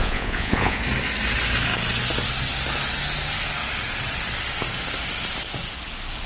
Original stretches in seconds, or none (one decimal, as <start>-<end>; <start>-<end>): 0.8-6.3